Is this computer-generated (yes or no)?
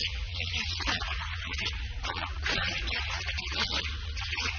yes